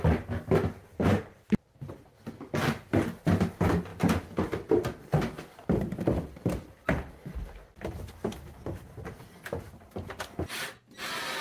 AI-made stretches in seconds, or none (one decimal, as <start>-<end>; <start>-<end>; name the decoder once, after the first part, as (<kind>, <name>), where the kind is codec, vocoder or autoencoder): none